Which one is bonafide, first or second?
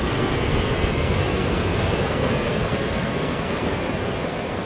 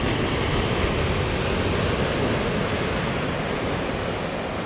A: second